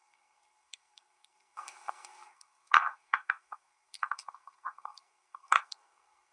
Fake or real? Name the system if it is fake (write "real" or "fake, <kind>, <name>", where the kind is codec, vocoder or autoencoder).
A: fake, codec, SNAC